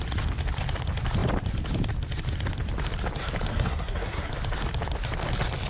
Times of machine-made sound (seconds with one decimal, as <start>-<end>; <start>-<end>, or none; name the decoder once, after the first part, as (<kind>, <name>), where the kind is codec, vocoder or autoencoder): 3.5-4.3 (codec, SNAC)